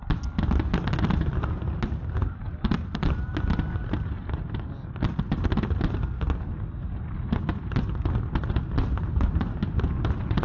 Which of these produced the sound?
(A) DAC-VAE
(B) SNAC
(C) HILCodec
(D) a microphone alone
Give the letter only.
D